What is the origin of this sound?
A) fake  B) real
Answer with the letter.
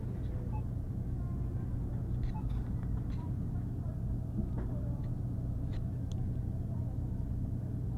A